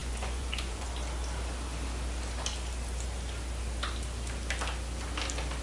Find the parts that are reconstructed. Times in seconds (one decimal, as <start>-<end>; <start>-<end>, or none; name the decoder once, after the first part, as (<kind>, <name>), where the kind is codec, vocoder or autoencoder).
0.0-0.9 (vocoder, Vocos)